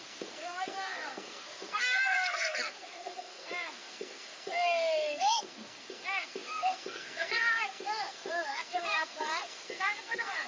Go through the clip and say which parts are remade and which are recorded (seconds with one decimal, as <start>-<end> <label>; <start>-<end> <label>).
0.0-10.5 remade